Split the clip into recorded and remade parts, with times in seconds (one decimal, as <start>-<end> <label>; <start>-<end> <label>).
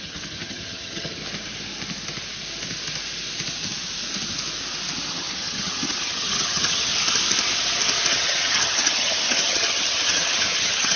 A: 0.0-1.2 remade; 1.2-5.1 recorded; 5.1-6.9 remade; 6.9-8.1 recorded; 8.1-11.0 remade